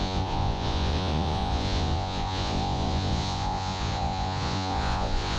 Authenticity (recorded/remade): remade